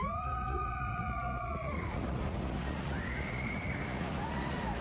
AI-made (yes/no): yes